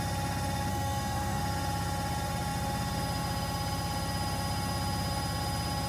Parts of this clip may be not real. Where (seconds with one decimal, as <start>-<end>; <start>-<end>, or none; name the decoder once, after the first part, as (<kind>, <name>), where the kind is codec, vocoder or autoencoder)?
0.7-1.4 (codec, SNAC)